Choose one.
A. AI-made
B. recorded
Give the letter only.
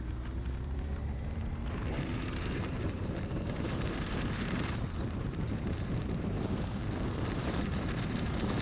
A